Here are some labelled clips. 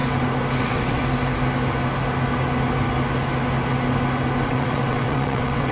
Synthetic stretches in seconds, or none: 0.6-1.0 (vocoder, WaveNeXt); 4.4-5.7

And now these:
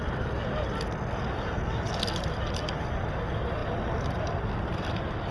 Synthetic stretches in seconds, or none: none

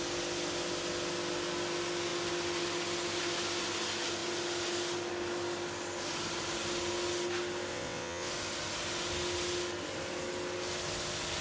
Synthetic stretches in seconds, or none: 7.7-8.3 (vocoder, WaveNeXt)

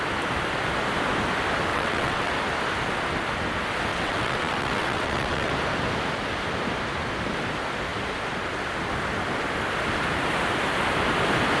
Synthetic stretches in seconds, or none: 1.7-2.3 (vocoder, WaveNeXt); 3.9-5.5

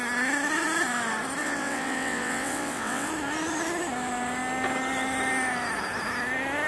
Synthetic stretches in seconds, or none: 1.4-3.1 (vocoder, WaveNeXt)